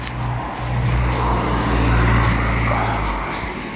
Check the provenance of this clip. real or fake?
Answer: real